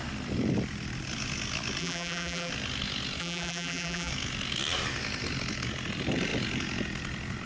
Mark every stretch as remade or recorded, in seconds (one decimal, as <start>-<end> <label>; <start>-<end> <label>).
0.0-1.8 recorded; 1.8-2.5 remade; 2.5-3.2 recorded; 3.2-4.1 remade; 4.1-7.5 recorded